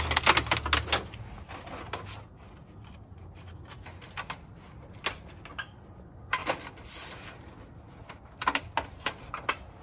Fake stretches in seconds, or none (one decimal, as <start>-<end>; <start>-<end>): none